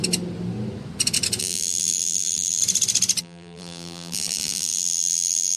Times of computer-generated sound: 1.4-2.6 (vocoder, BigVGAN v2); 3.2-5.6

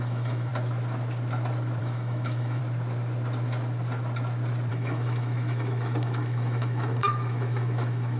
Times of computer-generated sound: 0.0-0.5 (autoencoder, DAC-VAE); 1.8-2.6; 4.7-8.2

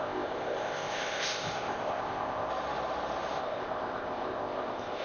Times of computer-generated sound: 0.0-2.5 (codec, ZipCodec); 3.4-5.0

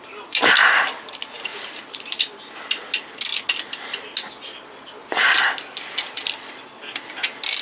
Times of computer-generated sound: 1.5-2.5 (vocoder, BigVGAN v2)

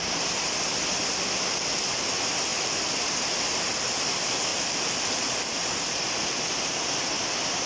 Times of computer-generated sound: 2.5-3.0 (vocoder, BigVGAN v2); 4.5-7.0

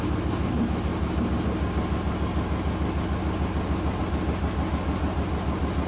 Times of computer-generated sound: none